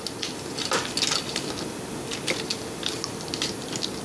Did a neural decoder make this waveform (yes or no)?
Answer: no